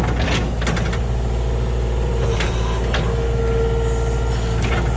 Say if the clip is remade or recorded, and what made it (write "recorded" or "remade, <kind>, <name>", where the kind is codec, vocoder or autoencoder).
recorded